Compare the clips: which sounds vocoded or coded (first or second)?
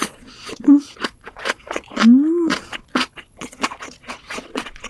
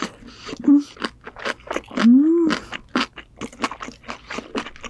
first